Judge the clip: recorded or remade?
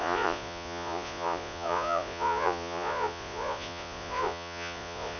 remade